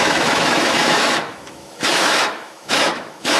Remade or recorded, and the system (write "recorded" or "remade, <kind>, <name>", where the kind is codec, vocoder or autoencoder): remade, autoencoder, DAC-VAE